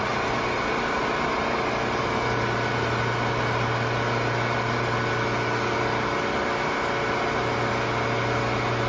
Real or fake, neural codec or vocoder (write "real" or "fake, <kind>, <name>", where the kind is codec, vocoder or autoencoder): real